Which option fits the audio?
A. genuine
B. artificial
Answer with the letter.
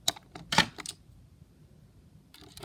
A